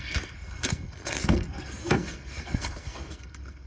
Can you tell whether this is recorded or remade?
remade